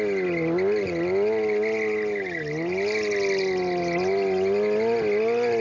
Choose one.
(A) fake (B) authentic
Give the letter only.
B